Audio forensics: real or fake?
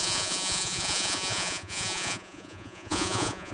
fake